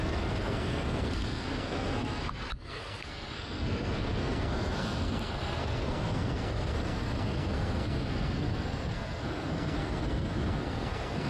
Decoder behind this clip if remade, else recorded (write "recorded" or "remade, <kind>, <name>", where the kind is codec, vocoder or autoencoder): remade, codec, SNAC